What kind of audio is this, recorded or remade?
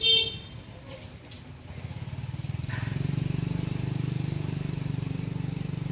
recorded